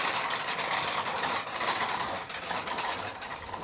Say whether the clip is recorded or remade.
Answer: recorded